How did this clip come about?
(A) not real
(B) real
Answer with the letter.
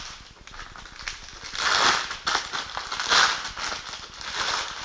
B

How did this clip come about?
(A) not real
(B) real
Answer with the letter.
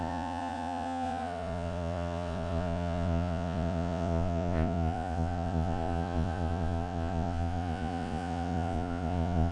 A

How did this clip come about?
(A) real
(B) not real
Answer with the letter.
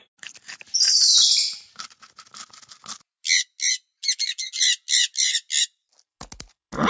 A